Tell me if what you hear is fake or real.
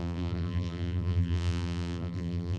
fake